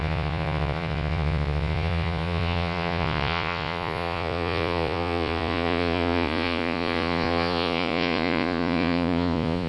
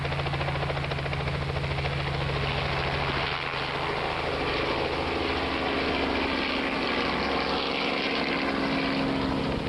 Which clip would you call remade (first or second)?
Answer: first